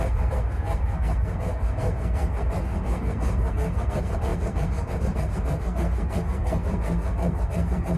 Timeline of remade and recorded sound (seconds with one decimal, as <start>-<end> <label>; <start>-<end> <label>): 0.0-8.0 remade